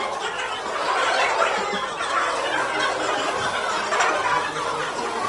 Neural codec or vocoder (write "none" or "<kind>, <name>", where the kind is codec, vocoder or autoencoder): none